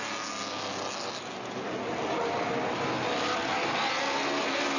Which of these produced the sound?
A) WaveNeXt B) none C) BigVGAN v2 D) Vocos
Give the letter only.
B